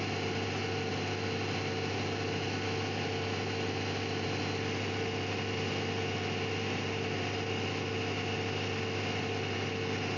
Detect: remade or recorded recorded